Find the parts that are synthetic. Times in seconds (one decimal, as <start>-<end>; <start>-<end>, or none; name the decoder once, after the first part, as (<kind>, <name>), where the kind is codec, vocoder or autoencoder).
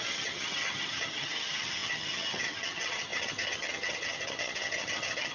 0.0-5.3 (vocoder, HiFi-GAN)